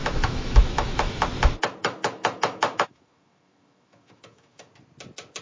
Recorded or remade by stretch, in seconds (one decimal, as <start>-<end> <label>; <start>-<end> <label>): 0.0-1.2 remade; 1.2-1.8 recorded; 1.8-4.7 remade; 4.7-5.4 recorded